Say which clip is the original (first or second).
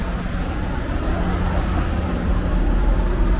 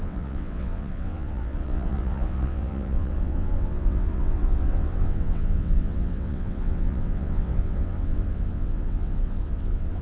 first